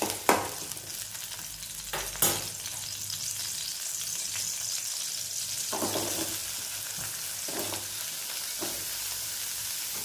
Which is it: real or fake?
real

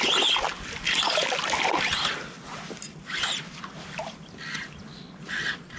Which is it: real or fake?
real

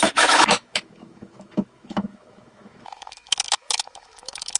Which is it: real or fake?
fake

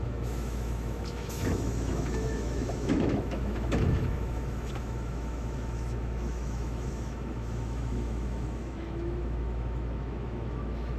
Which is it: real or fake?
fake